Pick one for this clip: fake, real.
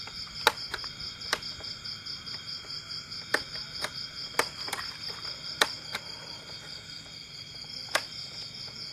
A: real